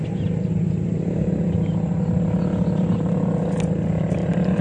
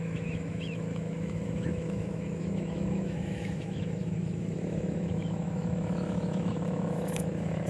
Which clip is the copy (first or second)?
second